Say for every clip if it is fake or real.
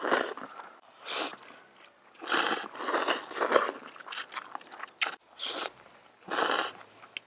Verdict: real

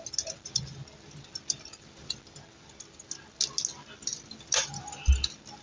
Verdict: real